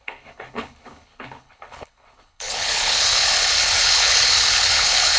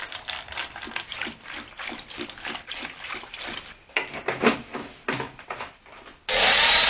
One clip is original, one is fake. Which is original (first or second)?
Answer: second